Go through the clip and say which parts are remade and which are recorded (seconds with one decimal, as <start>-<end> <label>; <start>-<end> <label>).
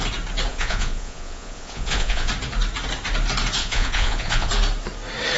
0.0-0.5 recorded; 0.5-2.3 remade; 2.3-3.6 recorded; 3.6-4.5 remade; 4.5-5.4 recorded